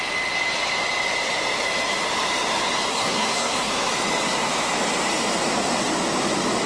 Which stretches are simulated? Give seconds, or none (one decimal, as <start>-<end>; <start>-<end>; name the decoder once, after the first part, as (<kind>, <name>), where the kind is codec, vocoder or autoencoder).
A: 2.9-3.9 (codec, SNAC)